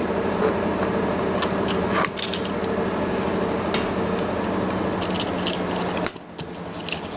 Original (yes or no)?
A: yes